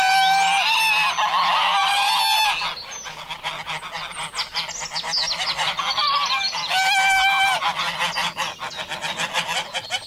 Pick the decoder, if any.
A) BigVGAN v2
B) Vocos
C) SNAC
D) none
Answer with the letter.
D